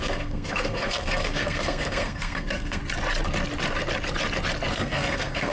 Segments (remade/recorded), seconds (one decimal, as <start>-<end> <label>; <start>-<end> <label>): 0.0-2.8 remade; 2.8-4.7 recorded; 4.7-5.5 remade